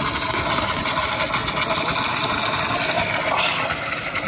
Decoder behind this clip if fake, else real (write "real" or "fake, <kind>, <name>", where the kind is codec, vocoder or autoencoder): real